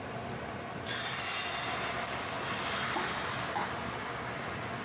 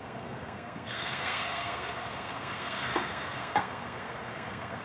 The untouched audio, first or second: first